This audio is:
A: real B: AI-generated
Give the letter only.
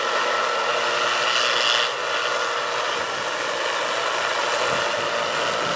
A